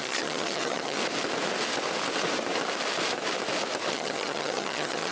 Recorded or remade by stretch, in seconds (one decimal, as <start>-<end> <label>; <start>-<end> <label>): 0.0-1.0 remade; 1.0-3.9 recorded; 3.9-5.1 remade